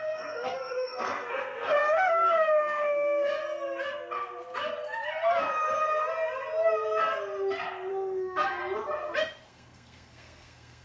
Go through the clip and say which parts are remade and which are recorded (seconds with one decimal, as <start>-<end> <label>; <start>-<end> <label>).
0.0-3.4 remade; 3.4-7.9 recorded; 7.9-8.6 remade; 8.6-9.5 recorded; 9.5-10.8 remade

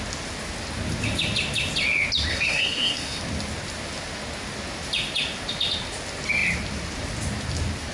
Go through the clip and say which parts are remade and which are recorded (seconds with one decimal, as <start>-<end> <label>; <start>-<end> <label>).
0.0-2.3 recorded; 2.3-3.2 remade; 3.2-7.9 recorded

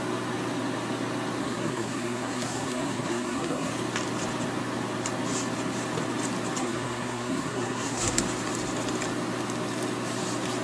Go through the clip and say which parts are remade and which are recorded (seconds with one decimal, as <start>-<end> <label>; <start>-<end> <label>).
0.0-1.4 recorded; 1.4-3.7 remade; 3.7-6.6 recorded; 6.6-8.2 remade; 8.2-10.6 recorded